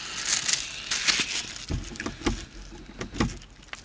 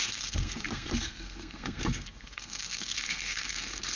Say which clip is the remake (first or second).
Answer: second